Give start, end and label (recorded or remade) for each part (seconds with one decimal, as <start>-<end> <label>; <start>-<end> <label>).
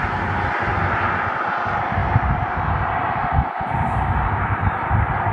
0.0-5.3 recorded